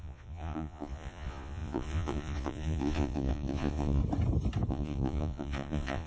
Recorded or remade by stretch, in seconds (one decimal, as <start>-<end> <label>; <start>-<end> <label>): 0.0-4.0 remade; 4.0-4.7 recorded; 4.7-6.1 remade